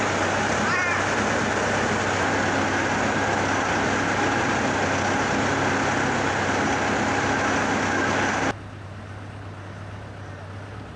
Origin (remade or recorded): recorded